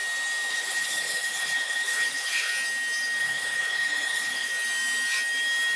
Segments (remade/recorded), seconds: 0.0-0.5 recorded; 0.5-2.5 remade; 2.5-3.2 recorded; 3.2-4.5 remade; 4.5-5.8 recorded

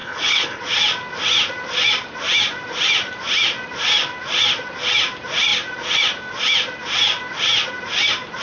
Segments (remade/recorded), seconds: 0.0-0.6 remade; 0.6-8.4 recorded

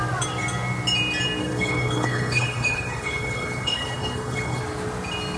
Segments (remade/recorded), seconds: 0.0-1.4 recorded; 1.4-4.6 remade; 4.6-5.4 recorded

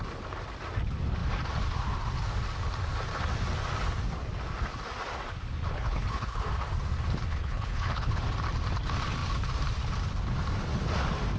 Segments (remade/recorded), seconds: 0.0-5.7 recorded; 5.7-6.4 remade; 6.4-7.3 recorded; 7.3-8.2 remade; 8.2-11.4 recorded

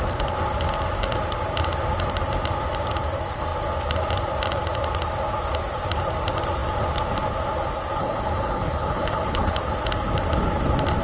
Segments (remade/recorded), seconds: 0.0-8.0 recorded; 8.0-9.6 remade; 9.6-11.0 recorded